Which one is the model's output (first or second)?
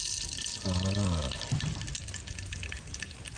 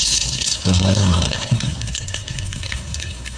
second